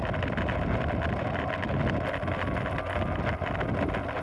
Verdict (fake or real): real